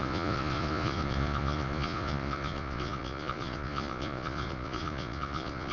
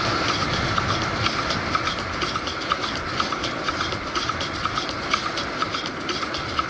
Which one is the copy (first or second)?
first